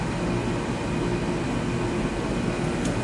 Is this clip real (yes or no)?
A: yes